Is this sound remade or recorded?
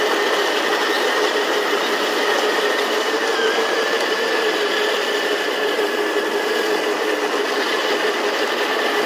remade